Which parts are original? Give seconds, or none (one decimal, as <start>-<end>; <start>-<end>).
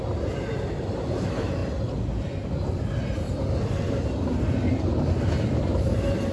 0.0-6.3